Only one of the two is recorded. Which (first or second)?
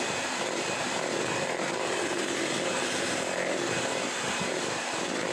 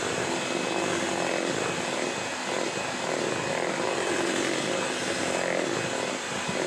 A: second